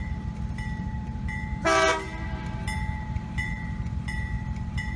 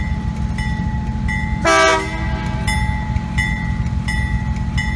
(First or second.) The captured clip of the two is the second